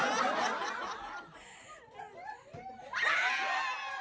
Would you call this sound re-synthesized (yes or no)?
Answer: no